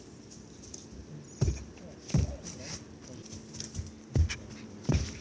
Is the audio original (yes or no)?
yes